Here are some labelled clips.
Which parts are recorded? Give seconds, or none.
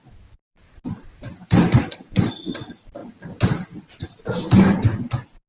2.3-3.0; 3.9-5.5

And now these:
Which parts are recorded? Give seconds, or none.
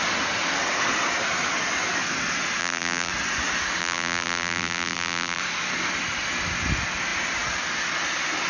0.0-2.6; 3.1-3.8; 5.4-8.5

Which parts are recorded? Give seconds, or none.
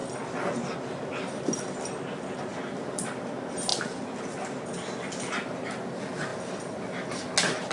0.0-3.7; 4.2-7.7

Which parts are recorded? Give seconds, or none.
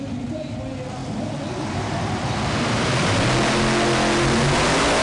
0.0-1.0; 3.3-5.0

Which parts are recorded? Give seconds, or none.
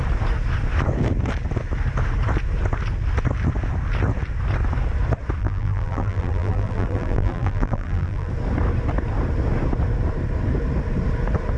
0.0-5.4; 8.3-11.6